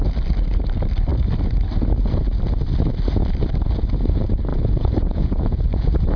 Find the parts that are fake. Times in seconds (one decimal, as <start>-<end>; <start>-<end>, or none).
4.5-6.2